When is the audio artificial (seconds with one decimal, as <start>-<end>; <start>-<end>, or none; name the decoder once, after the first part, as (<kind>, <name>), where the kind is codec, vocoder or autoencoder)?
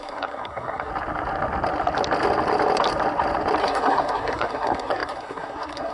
0.0-0.9 (codec, SNAC); 3.6-5.9